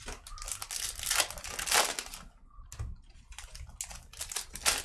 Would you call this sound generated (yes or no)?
no